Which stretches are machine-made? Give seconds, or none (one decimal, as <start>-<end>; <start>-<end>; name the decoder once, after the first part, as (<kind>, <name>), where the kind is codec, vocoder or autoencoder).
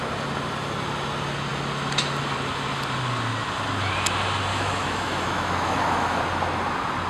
4.5-6.2 (autoencoder, DAC-VAE)